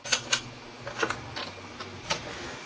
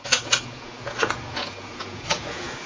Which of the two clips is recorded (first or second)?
first